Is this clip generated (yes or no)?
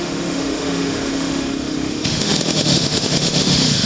yes